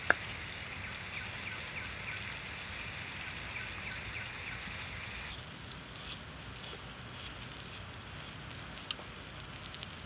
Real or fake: real